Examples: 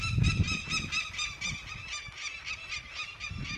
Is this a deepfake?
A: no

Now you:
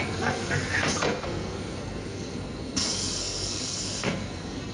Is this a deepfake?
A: yes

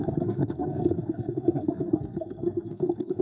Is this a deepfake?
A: yes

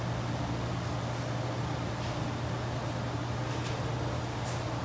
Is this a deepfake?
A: no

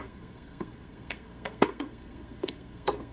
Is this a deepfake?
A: yes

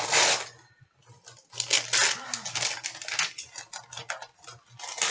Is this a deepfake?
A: no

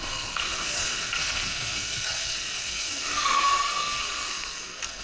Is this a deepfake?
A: yes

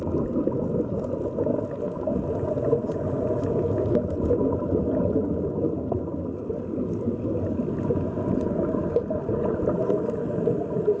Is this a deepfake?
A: no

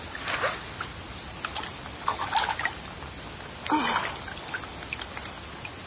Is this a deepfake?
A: no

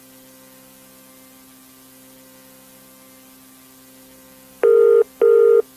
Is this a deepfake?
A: no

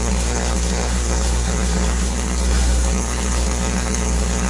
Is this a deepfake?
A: yes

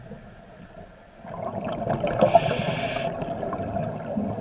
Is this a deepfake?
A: no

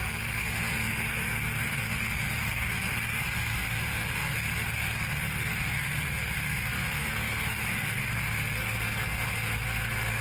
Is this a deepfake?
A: yes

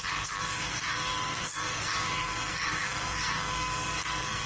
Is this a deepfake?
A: yes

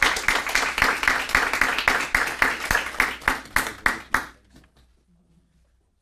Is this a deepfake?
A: no